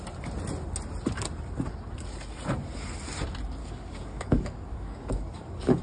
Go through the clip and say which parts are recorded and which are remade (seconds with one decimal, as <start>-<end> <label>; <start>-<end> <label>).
0.0-3.6 recorded; 3.6-5.8 remade